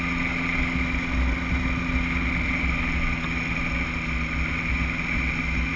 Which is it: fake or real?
real